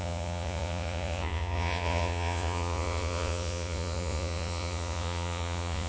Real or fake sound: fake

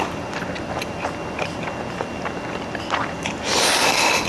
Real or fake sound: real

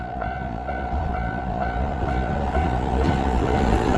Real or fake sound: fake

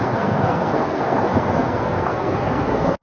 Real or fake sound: fake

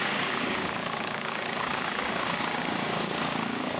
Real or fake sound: fake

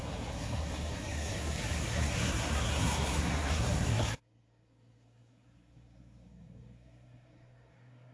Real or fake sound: fake